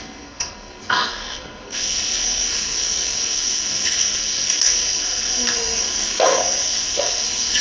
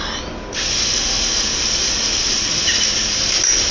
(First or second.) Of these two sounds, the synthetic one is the first